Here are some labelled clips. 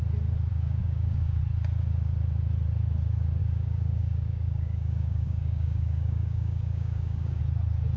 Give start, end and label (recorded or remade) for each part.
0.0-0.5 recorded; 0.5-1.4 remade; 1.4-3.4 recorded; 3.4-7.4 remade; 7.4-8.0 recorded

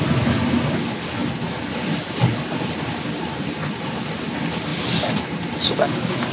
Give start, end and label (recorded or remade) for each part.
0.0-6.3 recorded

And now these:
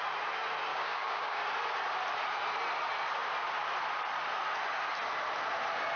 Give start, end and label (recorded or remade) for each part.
0.0-0.7 recorded; 0.7-1.4 remade; 1.4-6.0 recorded

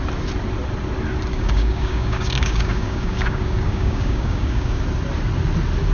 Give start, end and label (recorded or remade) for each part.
0.0-1.3 recorded; 1.3-4.8 remade; 4.8-5.9 recorded

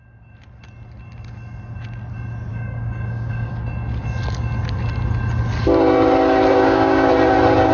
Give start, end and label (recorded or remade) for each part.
0.0-2.5 recorded; 2.5-3.5 remade; 3.5-6.5 recorded; 6.5-7.1 remade; 7.1-7.7 recorded